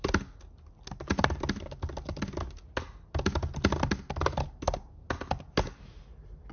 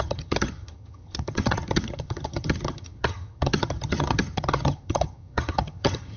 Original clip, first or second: first